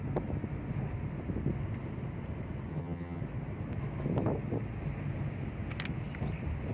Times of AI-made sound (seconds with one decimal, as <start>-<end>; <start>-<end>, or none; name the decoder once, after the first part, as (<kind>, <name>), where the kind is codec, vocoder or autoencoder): 2.7-3.2 (vocoder, HiFi-GAN)